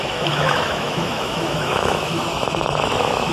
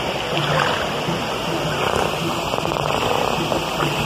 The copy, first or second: first